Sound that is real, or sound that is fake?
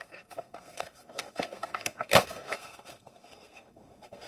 fake